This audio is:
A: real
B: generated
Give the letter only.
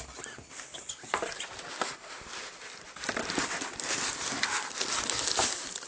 A